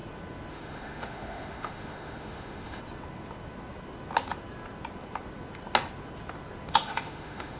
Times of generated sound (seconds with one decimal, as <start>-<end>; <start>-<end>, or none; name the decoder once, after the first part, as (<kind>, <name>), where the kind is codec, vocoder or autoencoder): 0.5-2.8 (autoencoder, DAC-VAE); 6.7-7.6